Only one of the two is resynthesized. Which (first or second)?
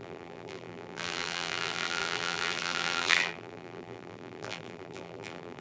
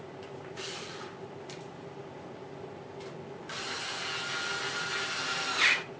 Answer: first